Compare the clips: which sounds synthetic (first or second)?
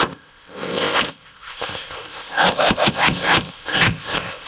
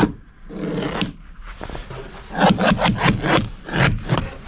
first